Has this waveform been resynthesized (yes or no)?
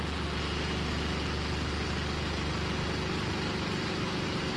no